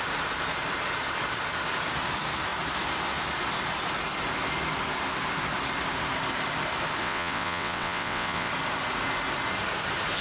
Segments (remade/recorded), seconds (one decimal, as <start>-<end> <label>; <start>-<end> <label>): 0.0-7.0 recorded; 7.0-8.5 remade; 8.5-10.2 recorded